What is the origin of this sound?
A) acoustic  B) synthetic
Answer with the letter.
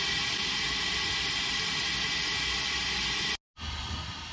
A